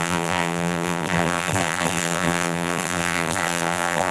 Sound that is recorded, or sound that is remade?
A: remade